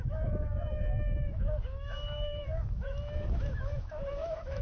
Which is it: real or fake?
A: fake